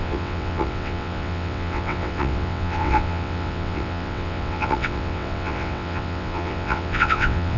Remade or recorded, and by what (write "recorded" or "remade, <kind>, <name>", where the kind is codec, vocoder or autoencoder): remade, vocoder, WaveNeXt